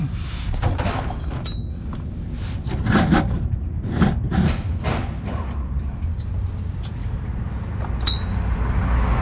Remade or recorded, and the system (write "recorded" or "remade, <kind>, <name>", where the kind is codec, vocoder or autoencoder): recorded